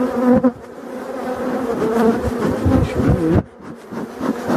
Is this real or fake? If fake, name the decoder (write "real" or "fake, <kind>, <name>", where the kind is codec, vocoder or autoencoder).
real